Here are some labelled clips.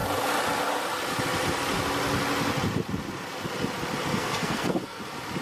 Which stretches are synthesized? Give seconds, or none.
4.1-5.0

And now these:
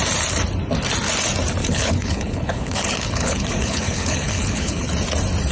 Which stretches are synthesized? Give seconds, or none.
1.6-4.9

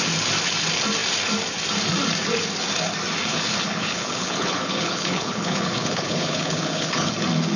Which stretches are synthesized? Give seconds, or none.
3.3-7.1

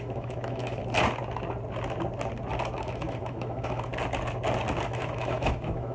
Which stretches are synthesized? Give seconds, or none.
0.0-0.8; 2.8-3.9; 4.8-5.9

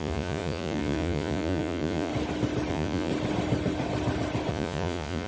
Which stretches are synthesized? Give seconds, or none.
0.0-2.1; 2.7-3.1; 4.5-5.3

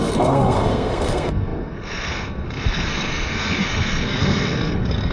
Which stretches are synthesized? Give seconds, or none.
0.0-5.1

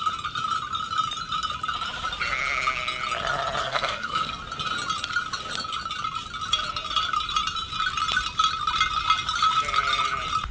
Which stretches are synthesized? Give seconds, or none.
3.6-4.4

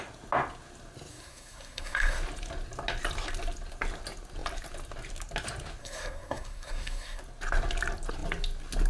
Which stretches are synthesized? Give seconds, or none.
1.1-2.2; 5.8-7.2